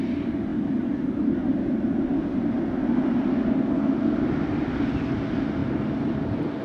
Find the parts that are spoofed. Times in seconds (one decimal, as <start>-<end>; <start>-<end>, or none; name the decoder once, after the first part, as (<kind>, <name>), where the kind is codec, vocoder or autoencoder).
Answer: 5.6-6.6 (vocoder, BigVGAN v2)